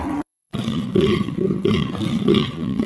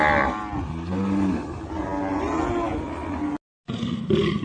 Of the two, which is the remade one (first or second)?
first